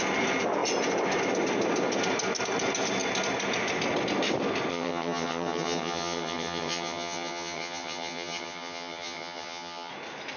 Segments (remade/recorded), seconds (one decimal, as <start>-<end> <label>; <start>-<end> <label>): 0.0-4.7 recorded; 4.7-9.9 remade; 9.9-10.4 recorded